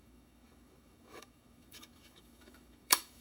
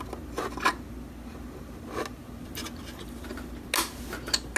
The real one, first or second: second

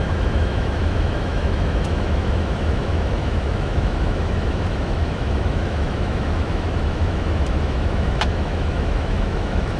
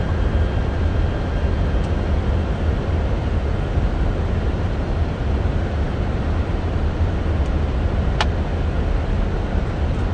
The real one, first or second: second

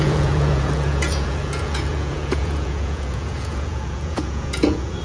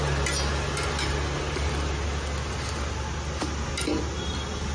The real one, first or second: second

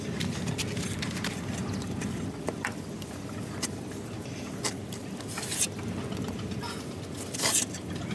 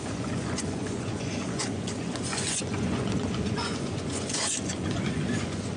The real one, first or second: first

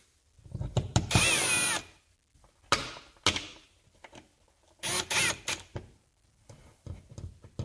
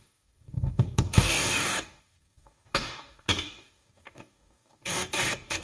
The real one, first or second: first